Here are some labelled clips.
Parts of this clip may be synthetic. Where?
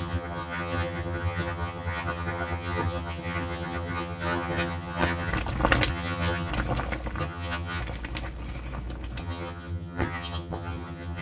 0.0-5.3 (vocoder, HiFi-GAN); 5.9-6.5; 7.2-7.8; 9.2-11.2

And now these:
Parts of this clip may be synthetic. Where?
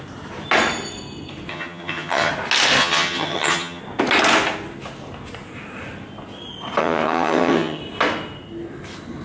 1.5-2.3 (vocoder, HiFi-GAN); 2.8-3.8; 6.8-7.8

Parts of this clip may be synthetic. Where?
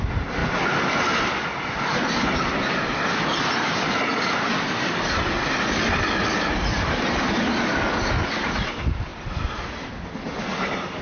none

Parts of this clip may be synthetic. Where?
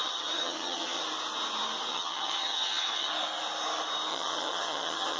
0.0-1.0 (vocoder, HiFi-GAN); 1.9-3.1; 4.1-5.2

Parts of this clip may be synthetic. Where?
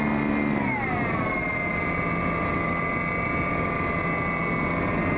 none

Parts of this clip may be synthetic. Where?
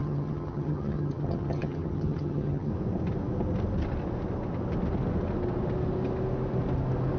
0.0-2.7 (vocoder, HiFi-GAN)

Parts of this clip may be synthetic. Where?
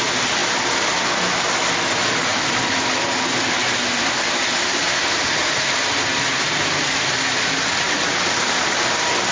none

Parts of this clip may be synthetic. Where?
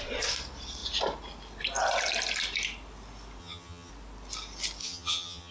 3.4-3.9 (vocoder, HiFi-GAN); 4.8-5.5